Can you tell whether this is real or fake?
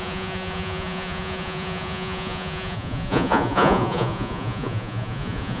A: fake